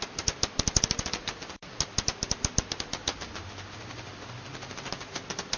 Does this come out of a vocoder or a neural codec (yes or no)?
no